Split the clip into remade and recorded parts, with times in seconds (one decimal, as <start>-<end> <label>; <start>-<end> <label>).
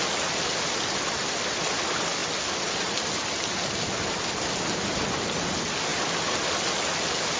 0.0-7.4 recorded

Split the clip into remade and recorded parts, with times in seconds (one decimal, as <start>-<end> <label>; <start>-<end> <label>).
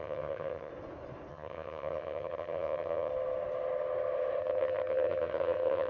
0.0-0.7 remade; 0.7-1.3 recorded; 1.3-3.1 remade; 3.1-4.4 recorded; 4.4-5.9 remade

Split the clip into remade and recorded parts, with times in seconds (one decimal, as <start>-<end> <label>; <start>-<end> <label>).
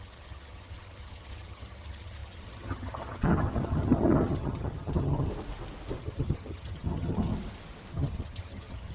0.0-5.3 remade; 5.3-6.0 recorded; 6.0-7.3 remade; 7.3-7.9 recorded; 7.9-8.9 remade